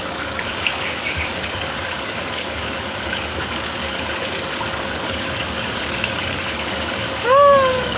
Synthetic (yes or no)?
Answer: yes